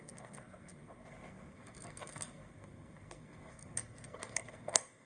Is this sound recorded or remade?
remade